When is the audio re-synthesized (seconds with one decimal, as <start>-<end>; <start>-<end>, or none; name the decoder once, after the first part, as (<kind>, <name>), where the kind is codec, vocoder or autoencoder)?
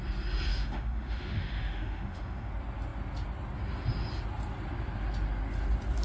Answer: 0.5-2.5 (autoencoder, DAC-VAE)